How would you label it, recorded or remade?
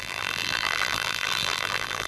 remade